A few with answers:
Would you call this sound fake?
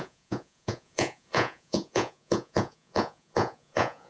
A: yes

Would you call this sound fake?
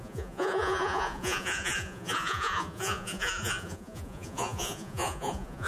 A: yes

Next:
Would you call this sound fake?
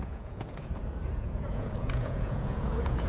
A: yes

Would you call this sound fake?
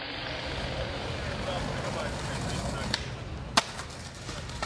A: no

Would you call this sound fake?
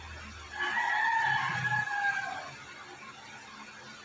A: no